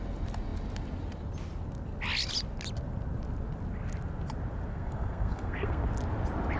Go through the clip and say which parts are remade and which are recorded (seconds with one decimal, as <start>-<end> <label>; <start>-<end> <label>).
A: 0.0-4.7 recorded; 4.7-5.8 remade; 5.8-6.6 recorded